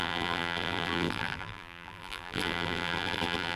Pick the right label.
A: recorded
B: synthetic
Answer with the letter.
B